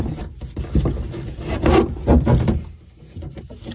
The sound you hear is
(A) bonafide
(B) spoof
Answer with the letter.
A